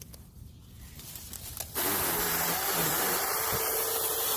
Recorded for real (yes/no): no